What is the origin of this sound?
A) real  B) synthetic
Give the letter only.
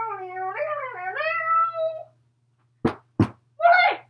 A